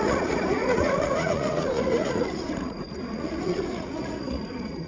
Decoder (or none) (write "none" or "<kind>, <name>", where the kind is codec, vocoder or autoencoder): vocoder, Vocos